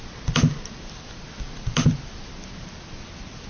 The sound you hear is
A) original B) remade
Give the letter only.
A